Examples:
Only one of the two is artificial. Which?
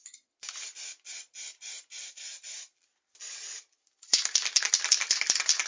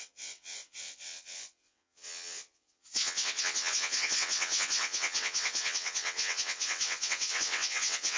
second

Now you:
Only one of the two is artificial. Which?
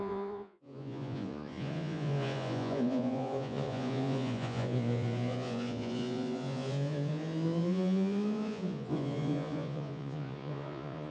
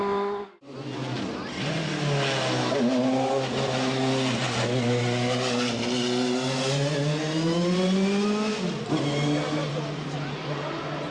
first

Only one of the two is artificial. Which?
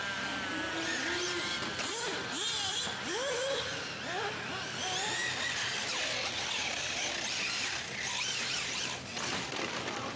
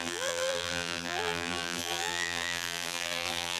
second